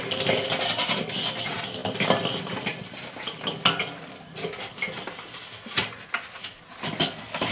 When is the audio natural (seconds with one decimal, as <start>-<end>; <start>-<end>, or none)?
0.0-7.5